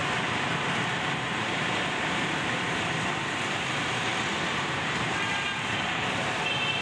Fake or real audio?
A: fake